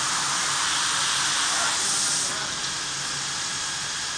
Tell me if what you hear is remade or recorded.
recorded